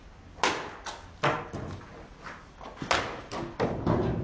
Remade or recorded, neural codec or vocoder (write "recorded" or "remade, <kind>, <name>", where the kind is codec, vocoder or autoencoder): recorded